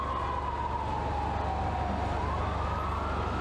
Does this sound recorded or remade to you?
recorded